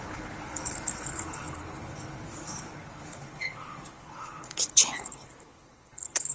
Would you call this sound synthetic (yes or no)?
yes